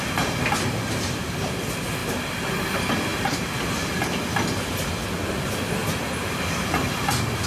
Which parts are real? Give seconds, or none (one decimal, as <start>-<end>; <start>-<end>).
0.0-7.5